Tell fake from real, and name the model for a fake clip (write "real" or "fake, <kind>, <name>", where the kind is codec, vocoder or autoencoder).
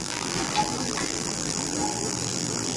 fake, vocoder, BigVGAN v2